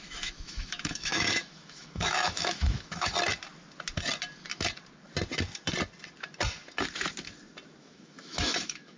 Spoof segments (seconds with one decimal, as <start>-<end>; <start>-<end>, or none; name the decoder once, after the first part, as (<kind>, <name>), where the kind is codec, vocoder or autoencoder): 0.0-3.1 (autoencoder, DAC-VAE); 7.8-9.0